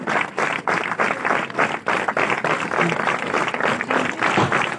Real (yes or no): yes